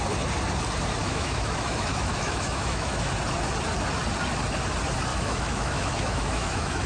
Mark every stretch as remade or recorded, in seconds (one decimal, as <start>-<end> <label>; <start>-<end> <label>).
0.0-1.0 recorded; 1.0-3.1 remade; 3.1-5.1 recorded; 5.1-6.9 remade